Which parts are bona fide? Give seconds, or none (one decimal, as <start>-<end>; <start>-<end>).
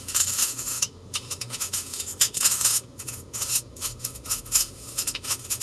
none